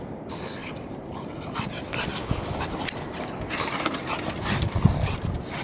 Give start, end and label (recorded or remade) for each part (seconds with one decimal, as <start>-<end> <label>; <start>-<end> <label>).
0.0-0.6 recorded; 0.6-4.0 remade; 4.0-5.6 recorded